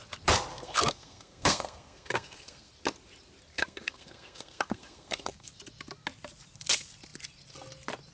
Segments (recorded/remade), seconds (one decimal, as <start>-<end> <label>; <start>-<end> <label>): 0.0-0.5 recorded; 0.5-2.7 remade; 2.7-3.5 recorded; 3.5-5.5 remade; 5.5-8.1 recorded